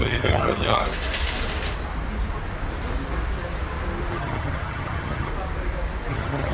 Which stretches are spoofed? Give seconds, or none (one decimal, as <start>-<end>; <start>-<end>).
0.0-0.8; 4.1-5.3; 6.1-6.5